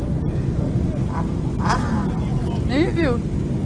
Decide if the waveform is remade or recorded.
recorded